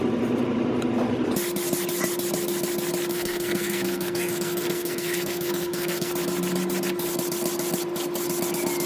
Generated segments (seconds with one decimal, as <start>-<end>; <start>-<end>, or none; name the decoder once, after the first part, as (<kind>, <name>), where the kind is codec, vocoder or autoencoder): 3.1-6.1 (codec, SNAC)